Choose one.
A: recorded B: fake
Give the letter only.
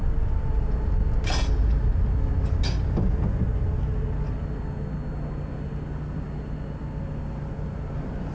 A